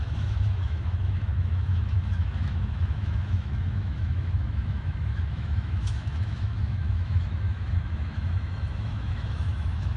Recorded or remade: remade